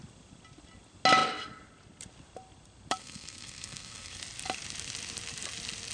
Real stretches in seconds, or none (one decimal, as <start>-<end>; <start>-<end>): 0.0-3.0; 4.2-5.9